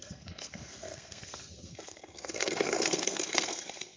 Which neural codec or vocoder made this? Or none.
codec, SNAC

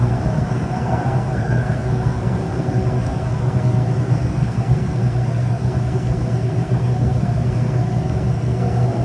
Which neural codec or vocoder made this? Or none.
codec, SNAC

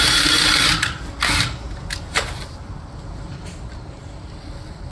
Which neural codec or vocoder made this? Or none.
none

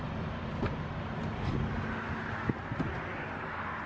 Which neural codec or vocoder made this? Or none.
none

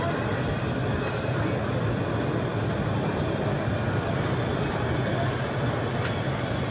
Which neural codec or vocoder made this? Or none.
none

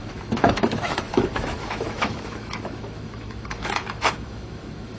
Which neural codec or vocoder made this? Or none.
autoencoder, DAC-VAE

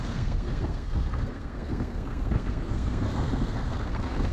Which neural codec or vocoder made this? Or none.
codec, SNAC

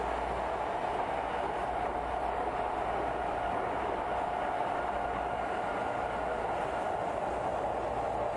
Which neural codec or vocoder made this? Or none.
none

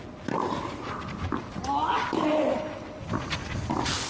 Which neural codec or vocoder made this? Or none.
none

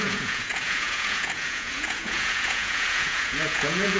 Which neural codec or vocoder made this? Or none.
vocoder, Vocos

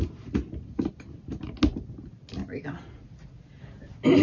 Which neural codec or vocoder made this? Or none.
none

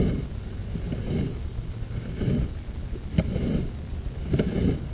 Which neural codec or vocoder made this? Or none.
none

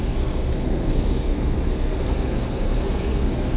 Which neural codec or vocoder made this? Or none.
codec, SNAC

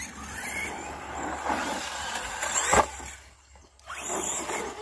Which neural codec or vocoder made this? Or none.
none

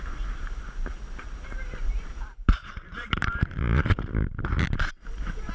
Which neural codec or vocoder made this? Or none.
vocoder, BigVGAN v2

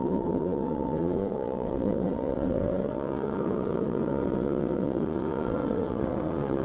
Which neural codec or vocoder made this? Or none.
vocoder, WaveNeXt